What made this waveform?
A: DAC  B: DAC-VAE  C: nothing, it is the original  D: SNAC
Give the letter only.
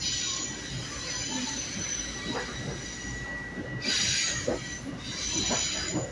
C